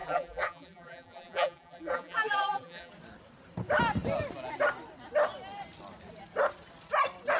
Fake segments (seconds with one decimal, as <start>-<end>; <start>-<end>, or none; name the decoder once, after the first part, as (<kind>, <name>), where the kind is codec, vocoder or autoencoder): 0.0-2.9 (vocoder, BigVGAN v2)